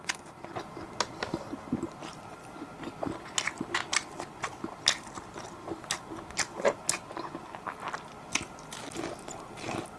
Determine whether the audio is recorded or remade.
recorded